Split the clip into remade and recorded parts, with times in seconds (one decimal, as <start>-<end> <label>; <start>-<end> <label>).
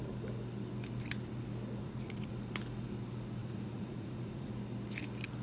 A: 0.0-1.8 recorded; 1.8-2.3 remade; 2.3-3.4 recorded; 3.4-4.5 remade; 4.5-5.4 recorded